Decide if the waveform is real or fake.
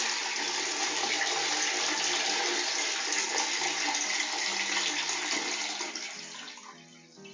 real